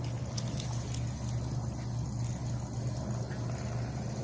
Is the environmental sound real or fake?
real